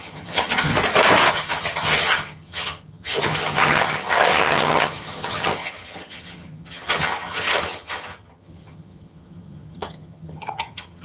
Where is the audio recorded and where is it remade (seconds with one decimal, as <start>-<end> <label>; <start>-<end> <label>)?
0.0-0.7 remade; 0.7-1.3 recorded; 1.3-11.0 remade